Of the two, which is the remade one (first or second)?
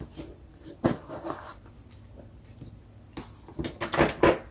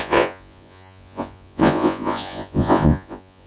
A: second